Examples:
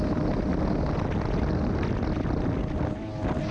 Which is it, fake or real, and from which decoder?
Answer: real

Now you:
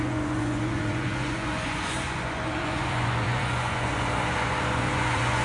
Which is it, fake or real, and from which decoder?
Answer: fake, vocoder, Vocos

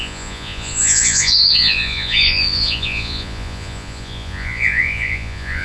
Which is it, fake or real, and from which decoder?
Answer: fake, vocoder, Vocos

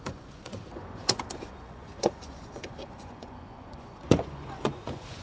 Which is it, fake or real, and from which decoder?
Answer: fake, vocoder, Vocos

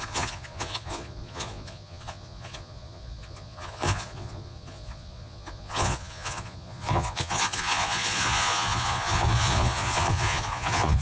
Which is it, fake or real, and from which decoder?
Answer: fake, vocoder, Vocos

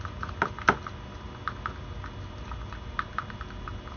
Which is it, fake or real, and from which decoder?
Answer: real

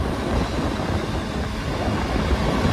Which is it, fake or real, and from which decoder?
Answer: real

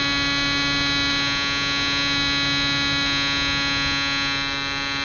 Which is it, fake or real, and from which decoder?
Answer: real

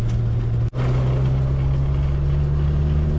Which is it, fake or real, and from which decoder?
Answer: real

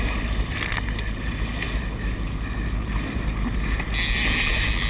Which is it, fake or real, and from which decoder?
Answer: real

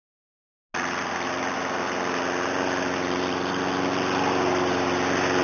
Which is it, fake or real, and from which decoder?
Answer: real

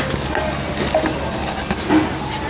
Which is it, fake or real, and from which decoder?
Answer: real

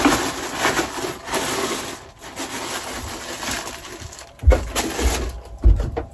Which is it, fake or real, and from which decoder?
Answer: real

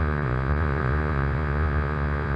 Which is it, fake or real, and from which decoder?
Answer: fake, vocoder, Vocos